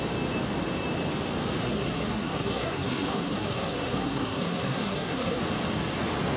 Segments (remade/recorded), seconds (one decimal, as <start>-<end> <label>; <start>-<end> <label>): 0.0-1.6 recorded; 1.6-5.4 remade; 5.4-6.4 recorded